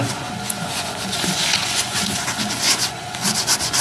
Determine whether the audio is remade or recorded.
remade